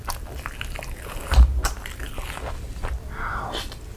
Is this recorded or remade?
recorded